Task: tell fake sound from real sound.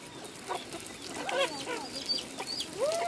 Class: real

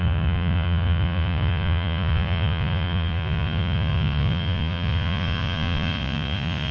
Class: fake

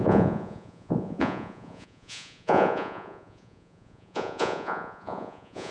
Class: fake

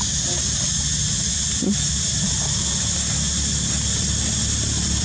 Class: real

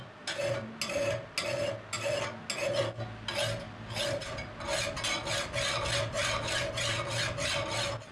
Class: real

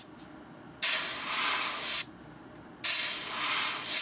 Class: real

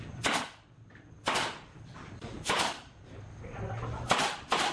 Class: real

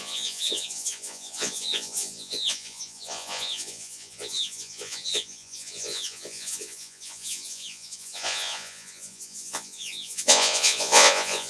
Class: fake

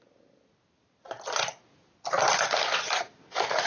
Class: real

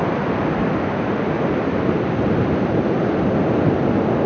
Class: real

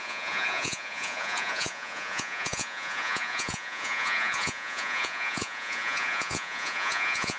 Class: fake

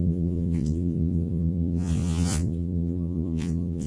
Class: fake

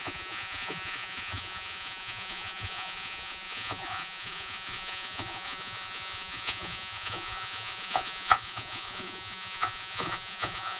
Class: fake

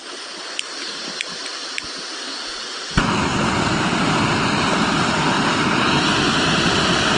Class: real